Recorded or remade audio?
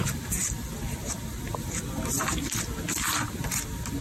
remade